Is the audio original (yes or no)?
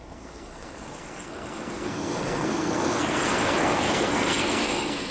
no